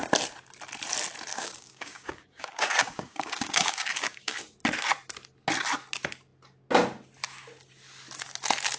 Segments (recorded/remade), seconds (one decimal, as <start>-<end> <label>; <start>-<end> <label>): 0.0-1.3 recorded; 1.3-4.4 remade; 4.4-8.8 recorded